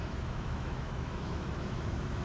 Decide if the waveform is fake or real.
fake